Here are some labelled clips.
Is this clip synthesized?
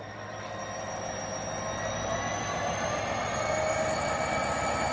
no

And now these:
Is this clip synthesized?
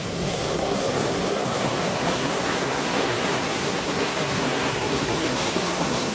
yes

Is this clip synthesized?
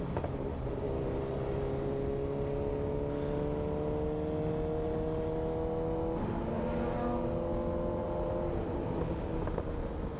no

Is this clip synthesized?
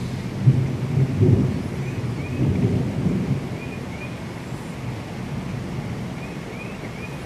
no